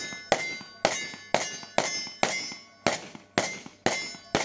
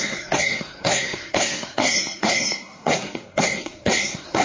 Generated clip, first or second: second